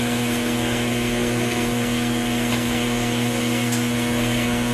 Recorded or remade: remade